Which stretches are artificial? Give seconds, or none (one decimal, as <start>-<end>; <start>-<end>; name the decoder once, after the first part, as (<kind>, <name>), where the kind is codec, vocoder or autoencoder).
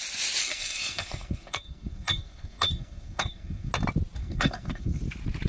0.4-3.7 (codec, SNAC); 4.2-5.0